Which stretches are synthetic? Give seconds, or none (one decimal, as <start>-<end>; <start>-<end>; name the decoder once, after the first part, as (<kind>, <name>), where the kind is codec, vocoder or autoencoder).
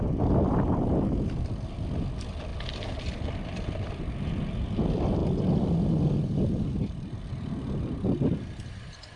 none